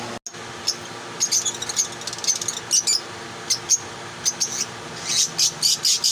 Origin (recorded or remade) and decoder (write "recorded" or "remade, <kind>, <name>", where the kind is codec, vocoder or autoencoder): recorded